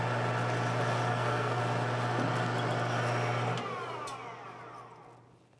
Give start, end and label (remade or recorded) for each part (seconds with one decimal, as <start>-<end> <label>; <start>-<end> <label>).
0.0-1.1 recorded; 1.1-1.6 remade; 1.6-5.6 recorded